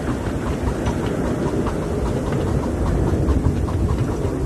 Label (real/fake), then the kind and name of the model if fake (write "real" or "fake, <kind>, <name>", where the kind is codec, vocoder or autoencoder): real